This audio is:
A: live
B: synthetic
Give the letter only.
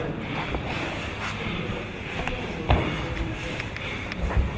A